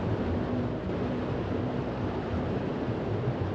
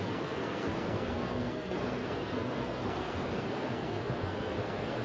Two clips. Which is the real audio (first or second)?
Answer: first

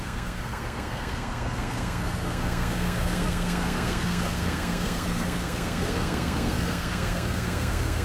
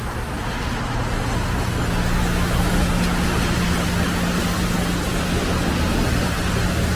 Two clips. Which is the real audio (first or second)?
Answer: second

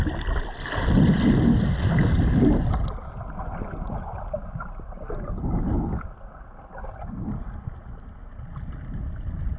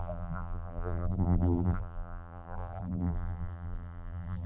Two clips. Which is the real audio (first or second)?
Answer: first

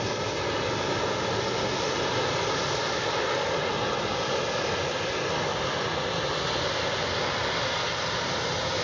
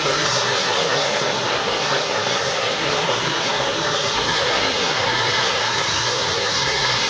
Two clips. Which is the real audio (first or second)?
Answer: first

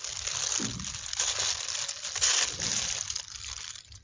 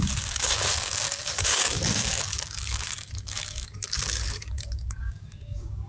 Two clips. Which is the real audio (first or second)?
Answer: first